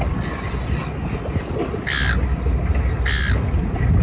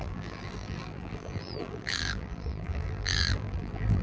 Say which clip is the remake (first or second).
second